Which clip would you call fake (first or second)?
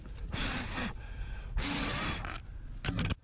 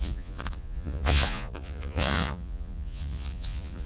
second